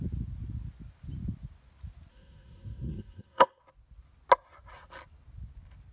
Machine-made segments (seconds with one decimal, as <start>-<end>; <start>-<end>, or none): 2.1-3.6